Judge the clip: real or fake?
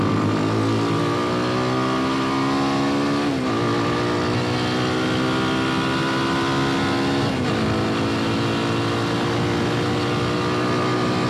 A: real